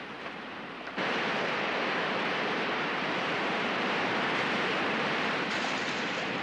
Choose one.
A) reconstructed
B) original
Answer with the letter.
A